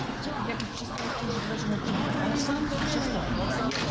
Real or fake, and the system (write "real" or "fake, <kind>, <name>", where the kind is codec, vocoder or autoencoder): real